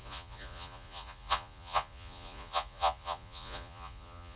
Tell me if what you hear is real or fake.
fake